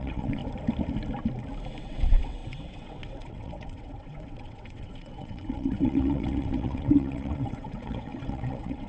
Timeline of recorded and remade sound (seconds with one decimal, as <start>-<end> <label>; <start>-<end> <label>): 0.0-0.4 remade; 0.4-1.8 recorded; 1.8-8.9 remade